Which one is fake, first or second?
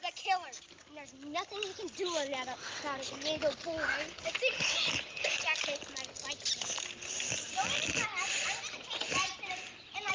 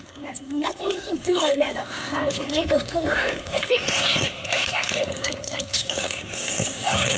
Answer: second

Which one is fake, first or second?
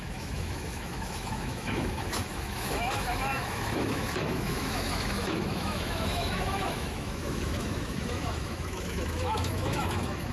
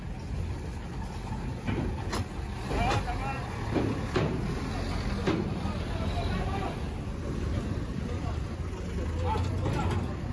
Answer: first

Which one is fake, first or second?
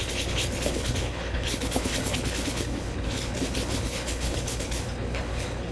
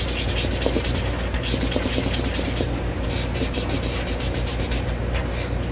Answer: first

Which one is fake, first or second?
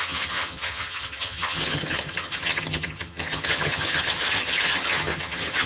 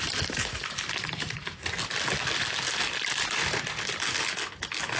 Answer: first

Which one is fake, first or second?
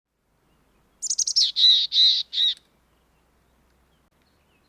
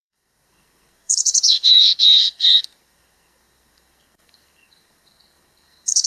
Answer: second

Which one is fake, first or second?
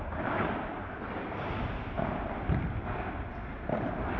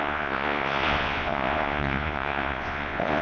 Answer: second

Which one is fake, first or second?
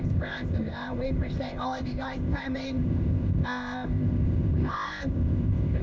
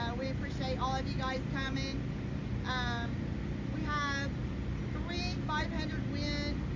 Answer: first